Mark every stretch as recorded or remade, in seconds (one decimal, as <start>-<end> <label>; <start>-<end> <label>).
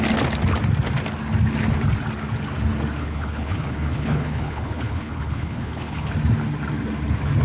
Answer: 0.0-3.0 recorded; 3.0-6.1 remade; 6.1-7.4 recorded